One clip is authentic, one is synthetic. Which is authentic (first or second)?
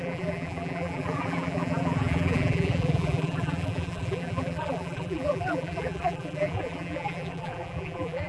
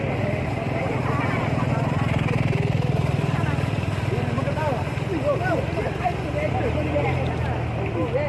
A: second